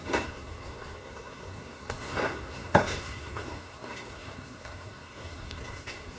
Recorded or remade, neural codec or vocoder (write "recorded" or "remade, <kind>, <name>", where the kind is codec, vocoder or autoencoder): remade, codec, SNAC